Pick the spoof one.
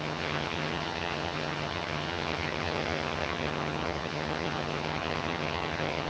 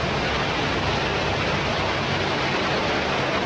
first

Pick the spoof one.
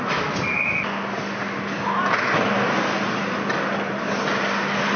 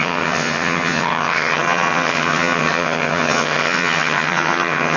second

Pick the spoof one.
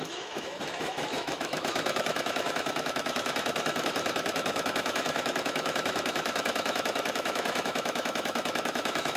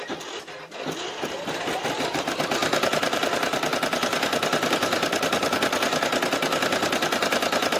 first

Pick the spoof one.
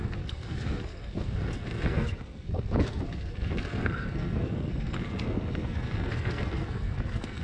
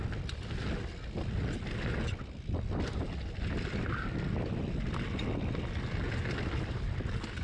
first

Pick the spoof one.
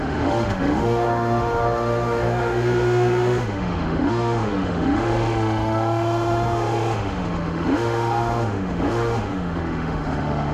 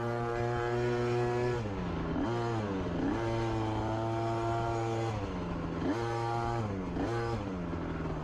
first